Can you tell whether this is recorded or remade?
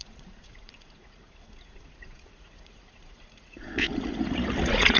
remade